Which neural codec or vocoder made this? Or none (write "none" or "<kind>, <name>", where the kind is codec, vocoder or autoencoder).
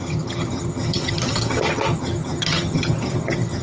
vocoder, HiFi-GAN